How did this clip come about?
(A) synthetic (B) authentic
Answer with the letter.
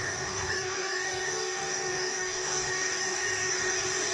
A